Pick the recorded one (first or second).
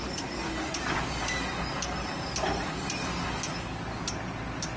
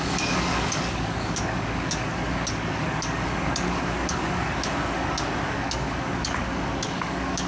first